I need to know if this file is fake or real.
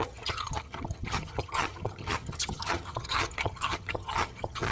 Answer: fake